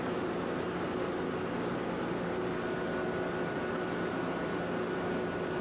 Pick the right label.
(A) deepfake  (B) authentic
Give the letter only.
B